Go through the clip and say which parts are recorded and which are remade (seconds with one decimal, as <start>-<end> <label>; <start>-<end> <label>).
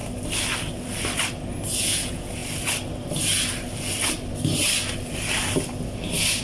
0.0-1.8 recorded; 1.8-2.4 remade; 2.4-6.4 recorded